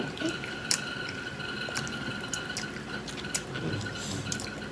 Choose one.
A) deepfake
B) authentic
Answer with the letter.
B